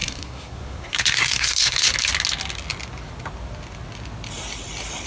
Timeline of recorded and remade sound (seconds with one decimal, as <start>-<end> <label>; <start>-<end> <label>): 0.0-1.9 remade; 1.9-5.1 recorded